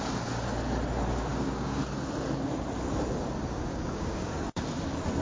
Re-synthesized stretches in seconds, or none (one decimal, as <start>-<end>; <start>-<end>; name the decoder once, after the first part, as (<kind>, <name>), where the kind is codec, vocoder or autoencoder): 1.3-1.8 (codec, DAC); 3.7-4.6